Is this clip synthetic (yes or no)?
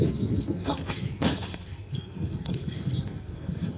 yes